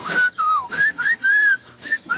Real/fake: fake